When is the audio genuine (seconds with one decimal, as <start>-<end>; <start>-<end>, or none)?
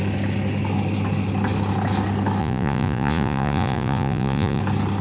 0.0-2.4; 4.6-5.0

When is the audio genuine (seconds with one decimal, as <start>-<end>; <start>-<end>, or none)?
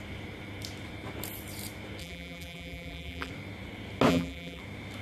0.0-2.0; 3.3-4.1; 4.6-5.0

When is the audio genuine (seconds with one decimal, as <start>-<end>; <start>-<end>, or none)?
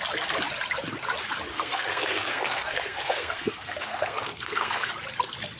0.0-1.5; 4.9-5.6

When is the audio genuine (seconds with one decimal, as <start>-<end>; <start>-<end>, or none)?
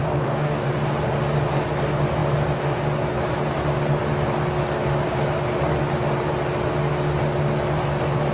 0.7-8.3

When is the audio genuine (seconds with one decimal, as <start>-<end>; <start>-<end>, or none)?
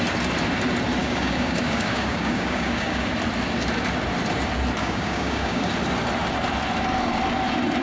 0.0-1.0; 3.1-4.8; 5.7-7.8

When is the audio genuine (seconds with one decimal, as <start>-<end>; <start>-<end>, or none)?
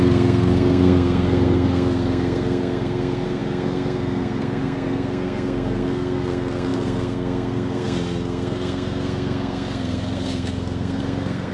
none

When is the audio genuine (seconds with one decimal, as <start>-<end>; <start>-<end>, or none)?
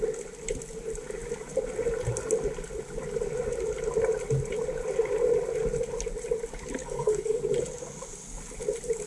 0.0-6.8; 7.4-9.1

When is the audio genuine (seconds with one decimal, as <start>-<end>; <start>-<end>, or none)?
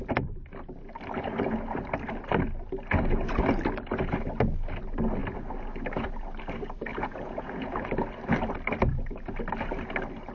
0.0-6.9; 7.9-10.3